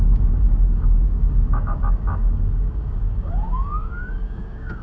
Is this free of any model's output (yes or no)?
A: no